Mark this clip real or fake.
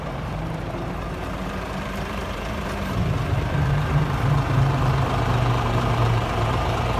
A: fake